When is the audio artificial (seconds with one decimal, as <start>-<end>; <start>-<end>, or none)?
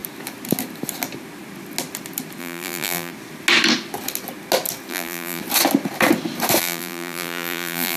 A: 2.4-3.1; 4.9-5.4; 6.6-8.0